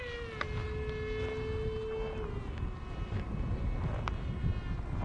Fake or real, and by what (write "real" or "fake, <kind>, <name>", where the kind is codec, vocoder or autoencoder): real